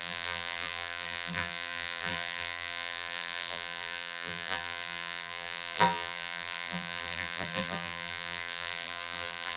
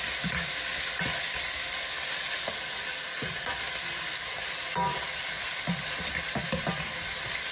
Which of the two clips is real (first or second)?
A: second